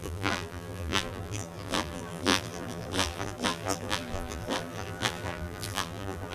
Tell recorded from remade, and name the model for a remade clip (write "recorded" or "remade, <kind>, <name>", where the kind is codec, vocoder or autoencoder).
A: remade, vocoder, BigVGAN v2